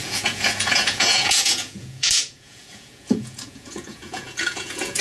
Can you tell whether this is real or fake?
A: fake